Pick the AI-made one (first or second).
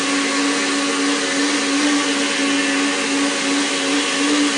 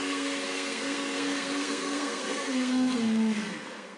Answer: second